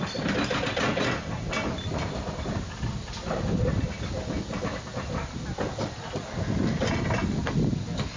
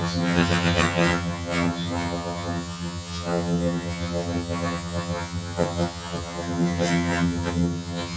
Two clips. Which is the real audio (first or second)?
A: first